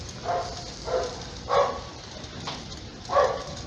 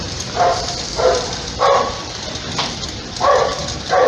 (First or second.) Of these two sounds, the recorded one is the first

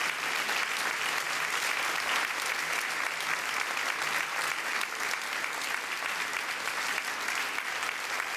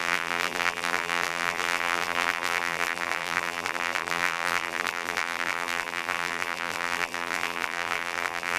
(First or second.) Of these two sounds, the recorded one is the first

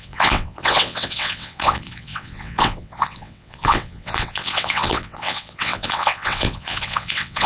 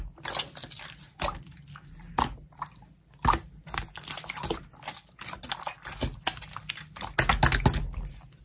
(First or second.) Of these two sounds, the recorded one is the second